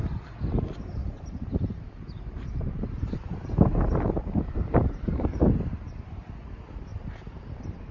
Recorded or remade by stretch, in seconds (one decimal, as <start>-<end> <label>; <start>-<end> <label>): 0.0-1.0 recorded; 1.0-5.4 remade; 5.4-6.9 recorded; 6.9-7.9 remade